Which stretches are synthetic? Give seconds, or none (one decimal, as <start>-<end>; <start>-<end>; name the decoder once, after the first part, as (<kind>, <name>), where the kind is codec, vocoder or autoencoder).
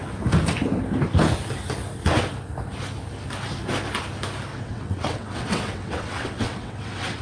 4.5-7.2 (vocoder, WaveNeXt)